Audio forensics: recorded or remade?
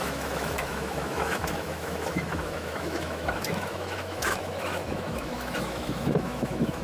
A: remade